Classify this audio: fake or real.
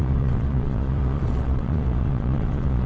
fake